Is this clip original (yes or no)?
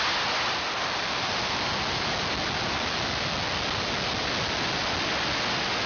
yes